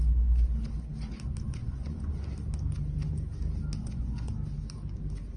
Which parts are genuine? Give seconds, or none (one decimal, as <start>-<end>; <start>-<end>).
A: 0.0-1.6; 2.3-3.8; 4.3-5.4